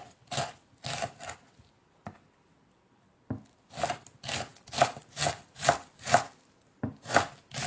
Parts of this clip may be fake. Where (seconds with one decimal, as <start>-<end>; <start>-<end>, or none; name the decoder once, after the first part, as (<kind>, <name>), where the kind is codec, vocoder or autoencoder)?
none